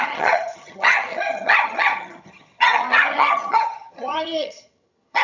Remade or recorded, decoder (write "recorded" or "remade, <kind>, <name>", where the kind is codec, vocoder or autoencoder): remade, vocoder, HiFi-GAN